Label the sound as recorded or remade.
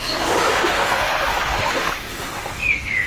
remade